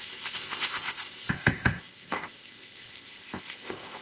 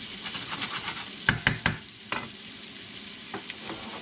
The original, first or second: second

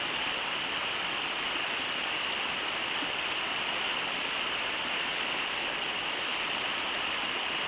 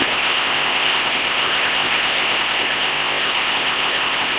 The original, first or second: first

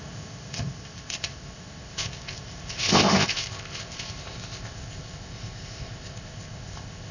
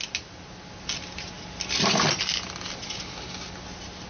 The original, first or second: second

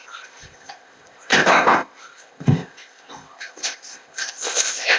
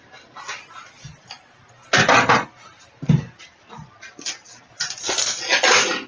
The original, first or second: second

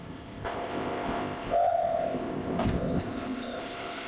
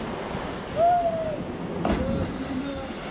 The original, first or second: second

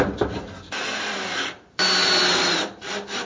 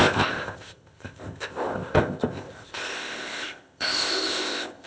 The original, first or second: first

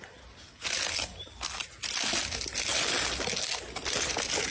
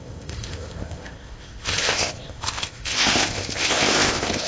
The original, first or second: first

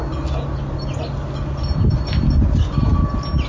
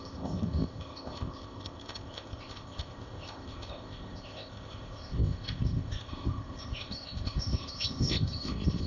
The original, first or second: first